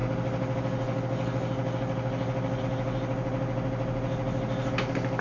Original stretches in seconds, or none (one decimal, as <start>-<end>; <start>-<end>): 0.0-5.2